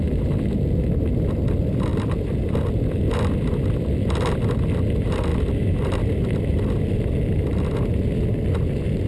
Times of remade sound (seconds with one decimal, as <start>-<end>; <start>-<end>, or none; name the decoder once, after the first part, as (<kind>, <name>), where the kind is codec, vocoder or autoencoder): none